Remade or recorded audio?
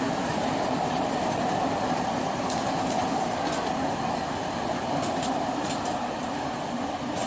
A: recorded